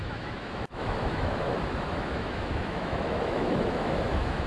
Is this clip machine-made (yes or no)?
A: yes